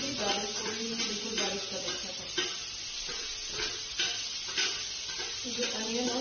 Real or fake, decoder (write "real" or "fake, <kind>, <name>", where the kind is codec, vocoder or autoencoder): real